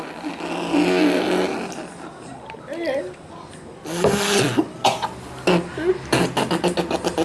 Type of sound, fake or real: real